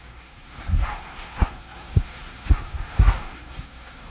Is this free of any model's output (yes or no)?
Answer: no